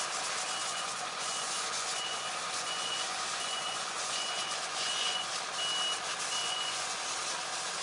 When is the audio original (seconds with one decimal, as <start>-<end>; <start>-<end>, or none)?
0.0-0.6; 5.3-6.4; 7.0-7.8